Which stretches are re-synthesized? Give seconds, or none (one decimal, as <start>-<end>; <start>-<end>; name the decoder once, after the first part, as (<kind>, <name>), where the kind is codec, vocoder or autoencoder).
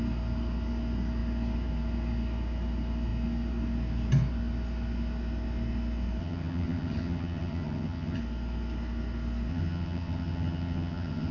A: 6.2-8.2 (vocoder, HiFi-GAN); 9.5-11.3